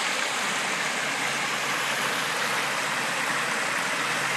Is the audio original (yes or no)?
yes